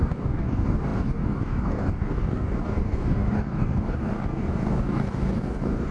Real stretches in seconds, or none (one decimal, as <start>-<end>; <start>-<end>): none